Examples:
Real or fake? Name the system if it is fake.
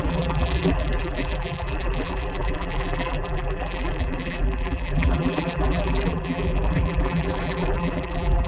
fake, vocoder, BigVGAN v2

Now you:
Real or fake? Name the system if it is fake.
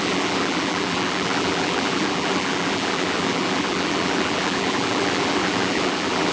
fake, vocoder, BigVGAN v2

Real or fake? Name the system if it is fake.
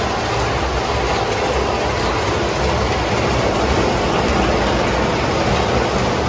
real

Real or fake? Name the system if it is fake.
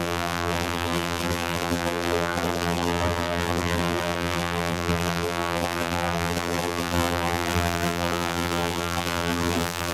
fake, vocoder, BigVGAN v2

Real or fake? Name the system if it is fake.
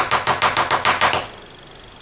real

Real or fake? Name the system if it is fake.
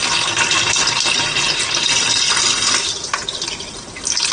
real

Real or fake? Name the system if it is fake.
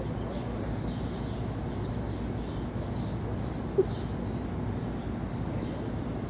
real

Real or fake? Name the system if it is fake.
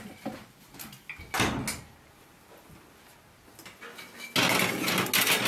real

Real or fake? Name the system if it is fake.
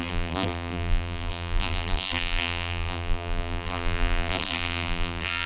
fake, vocoder, BigVGAN v2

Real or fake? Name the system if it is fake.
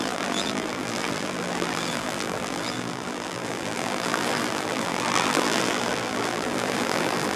fake, vocoder, BigVGAN v2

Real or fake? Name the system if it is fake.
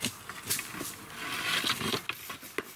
real